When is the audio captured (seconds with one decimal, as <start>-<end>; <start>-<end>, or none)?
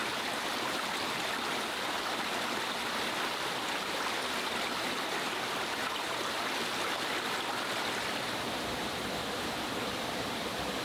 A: 0.0-10.8